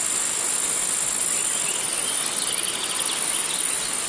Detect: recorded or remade recorded